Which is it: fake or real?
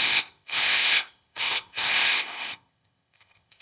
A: fake